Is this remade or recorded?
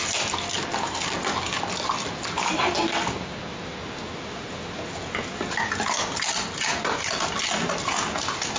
recorded